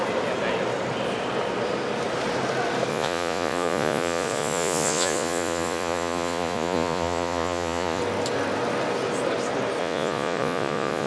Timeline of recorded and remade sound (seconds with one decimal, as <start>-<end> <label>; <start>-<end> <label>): 0.0-2.9 recorded; 2.9-8.0 remade; 8.0-9.8 recorded; 9.8-11.1 remade